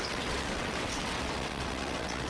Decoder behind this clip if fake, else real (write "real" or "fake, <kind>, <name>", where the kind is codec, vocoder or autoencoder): fake, vocoder, WaveNeXt